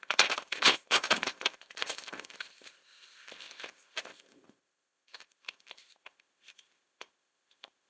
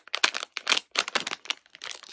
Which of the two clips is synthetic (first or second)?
first